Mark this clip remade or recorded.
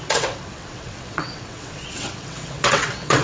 remade